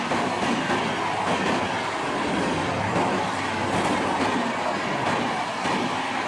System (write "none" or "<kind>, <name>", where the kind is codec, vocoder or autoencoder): none